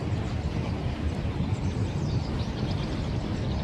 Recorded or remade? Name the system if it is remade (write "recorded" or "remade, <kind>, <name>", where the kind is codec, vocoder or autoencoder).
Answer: recorded